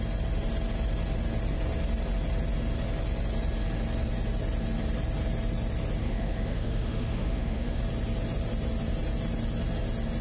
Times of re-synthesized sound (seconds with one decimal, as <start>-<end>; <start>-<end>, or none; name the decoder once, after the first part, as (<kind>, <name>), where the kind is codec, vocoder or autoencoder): 6.0-7.8 (autoencoder, DAC-VAE)